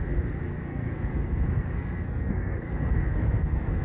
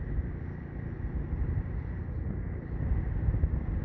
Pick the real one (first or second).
second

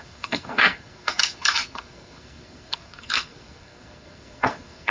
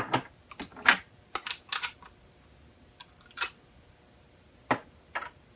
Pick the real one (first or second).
second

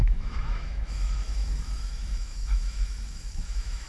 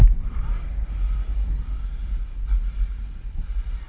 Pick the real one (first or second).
second